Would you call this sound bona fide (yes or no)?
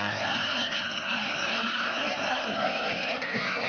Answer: no